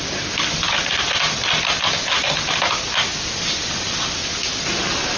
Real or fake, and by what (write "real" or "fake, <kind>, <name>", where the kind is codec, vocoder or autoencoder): real